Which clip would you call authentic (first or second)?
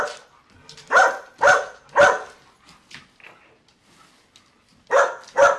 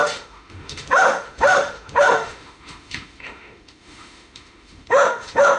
first